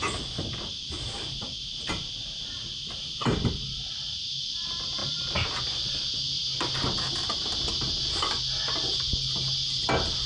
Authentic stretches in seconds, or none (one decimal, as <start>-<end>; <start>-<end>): 0.0-10.3